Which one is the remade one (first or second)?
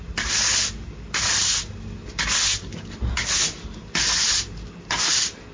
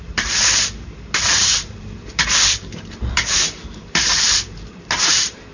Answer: second